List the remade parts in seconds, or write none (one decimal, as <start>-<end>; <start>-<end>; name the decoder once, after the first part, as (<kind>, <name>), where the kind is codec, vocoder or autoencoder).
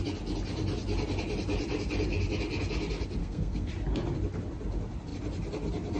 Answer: 3.2-3.7 (codec, SNAC)